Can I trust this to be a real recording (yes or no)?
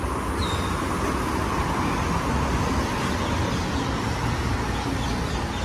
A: yes